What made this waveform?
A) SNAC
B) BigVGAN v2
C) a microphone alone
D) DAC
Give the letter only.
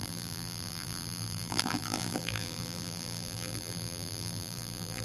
B